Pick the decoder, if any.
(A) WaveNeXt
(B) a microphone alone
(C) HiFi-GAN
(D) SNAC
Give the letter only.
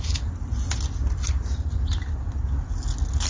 B